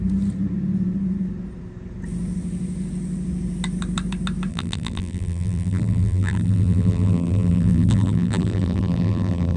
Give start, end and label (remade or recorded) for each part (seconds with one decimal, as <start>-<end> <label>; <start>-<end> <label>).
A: 0.0-4.5 recorded; 4.5-9.6 remade